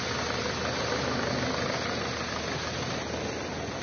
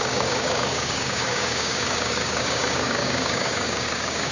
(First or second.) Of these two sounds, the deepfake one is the second